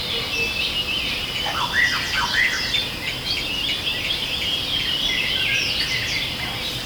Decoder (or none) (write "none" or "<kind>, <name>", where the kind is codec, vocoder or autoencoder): none